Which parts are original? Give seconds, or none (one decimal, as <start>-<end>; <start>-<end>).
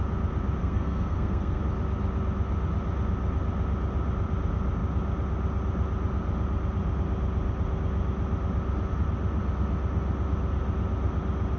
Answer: 0.0-0.6; 1.6-11.6